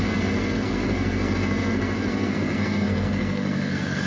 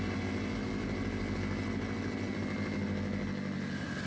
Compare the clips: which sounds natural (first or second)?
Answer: second